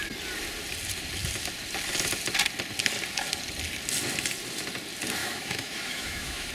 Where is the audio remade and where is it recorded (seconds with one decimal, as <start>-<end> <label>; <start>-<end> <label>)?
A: 0.0-5.2 recorded; 5.2-6.5 remade

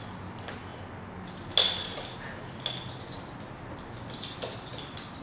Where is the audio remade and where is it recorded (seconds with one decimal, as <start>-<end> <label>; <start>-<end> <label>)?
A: 0.0-5.2 recorded

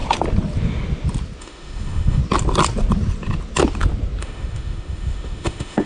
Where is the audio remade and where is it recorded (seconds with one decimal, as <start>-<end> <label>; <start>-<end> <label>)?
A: 0.0-1.4 recorded; 1.4-2.2 remade; 2.2-4.2 recorded; 4.2-5.9 remade

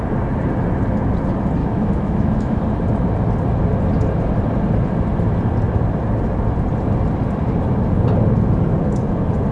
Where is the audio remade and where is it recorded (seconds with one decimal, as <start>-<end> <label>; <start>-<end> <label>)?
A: 0.0-1.6 recorded; 1.6-2.6 remade; 2.6-9.5 recorded

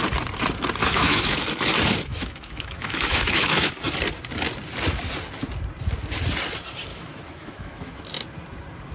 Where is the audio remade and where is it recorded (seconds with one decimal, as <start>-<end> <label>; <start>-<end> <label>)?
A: 0.0-0.8 recorded; 0.8-1.4 remade; 1.4-2.1 recorded; 2.1-3.7 remade; 3.7-6.9 recorded; 6.9-8.0 remade; 8.0-8.9 recorded

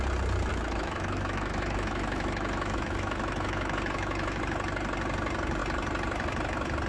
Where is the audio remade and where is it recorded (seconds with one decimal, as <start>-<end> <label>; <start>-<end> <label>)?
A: 0.0-0.5 recorded; 0.5-4.4 remade; 4.4-6.9 recorded